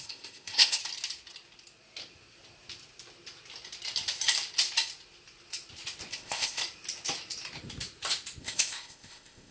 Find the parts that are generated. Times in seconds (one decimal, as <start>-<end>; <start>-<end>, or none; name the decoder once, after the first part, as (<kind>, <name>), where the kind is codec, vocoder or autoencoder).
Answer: 0.0-0.8 (codec, ZipCodec); 6.1-6.6; 8.4-9.5